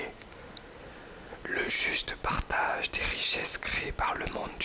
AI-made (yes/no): no